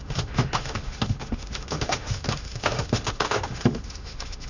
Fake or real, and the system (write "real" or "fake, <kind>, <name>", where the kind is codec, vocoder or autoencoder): fake, autoencoder, DAC-VAE